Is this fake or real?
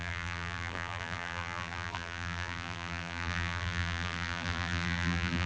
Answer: fake